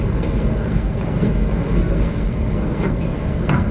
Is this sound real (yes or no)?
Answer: no